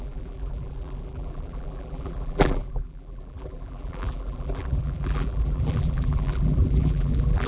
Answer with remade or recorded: remade